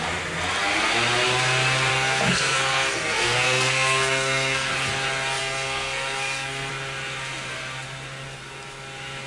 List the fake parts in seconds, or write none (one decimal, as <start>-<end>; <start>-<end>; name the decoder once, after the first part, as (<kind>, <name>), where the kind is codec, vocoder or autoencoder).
1.9-4.7 (codec, SNAC); 5.4-6.7